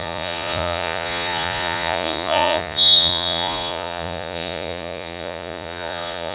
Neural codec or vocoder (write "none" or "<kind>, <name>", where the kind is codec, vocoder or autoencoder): vocoder, Vocos